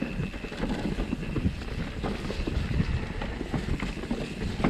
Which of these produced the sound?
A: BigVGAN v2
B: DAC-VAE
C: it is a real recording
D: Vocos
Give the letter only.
C